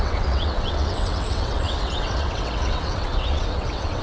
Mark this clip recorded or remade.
remade